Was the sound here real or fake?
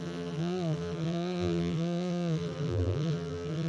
fake